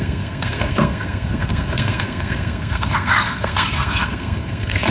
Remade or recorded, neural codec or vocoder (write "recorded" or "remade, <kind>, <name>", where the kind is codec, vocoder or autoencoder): remade, codec, SNAC